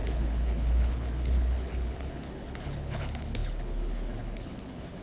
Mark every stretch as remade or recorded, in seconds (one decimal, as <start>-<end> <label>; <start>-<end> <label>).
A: 0.0-5.0 remade